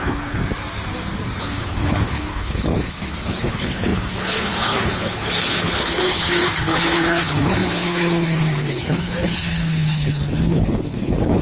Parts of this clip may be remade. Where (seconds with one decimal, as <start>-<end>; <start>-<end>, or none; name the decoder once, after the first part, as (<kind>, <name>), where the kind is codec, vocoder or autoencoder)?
0.0-0.4 (codec, HILCodec); 1.4-11.4